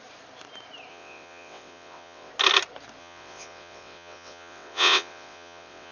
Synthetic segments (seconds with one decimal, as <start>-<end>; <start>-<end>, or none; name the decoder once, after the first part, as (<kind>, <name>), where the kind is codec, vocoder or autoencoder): 0.9-2.3 (vocoder, WaveNeXt); 3.0-5.9